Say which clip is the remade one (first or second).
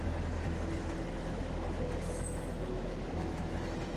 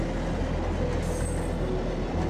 first